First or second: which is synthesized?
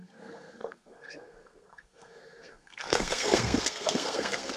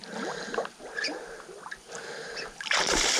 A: first